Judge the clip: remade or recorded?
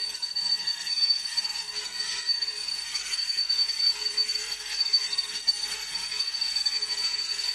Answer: remade